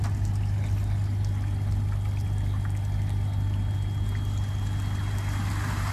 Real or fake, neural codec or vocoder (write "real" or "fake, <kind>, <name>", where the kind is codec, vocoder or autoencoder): real